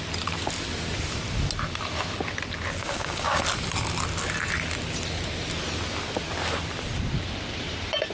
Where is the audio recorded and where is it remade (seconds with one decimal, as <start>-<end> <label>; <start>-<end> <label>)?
0.0-2.8 recorded; 2.8-3.4 remade; 3.4-8.1 recorded